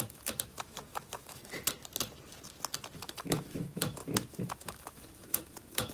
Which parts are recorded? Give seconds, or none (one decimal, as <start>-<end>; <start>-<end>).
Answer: 1.4-3.1